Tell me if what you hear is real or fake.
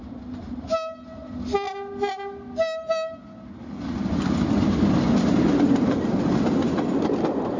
real